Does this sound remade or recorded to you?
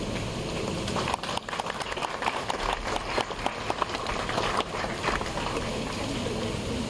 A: recorded